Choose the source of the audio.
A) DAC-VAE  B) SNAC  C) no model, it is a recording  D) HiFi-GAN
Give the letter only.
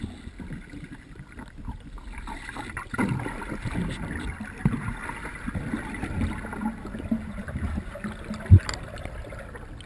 C